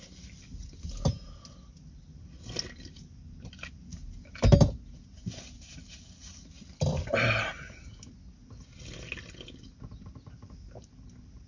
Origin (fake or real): real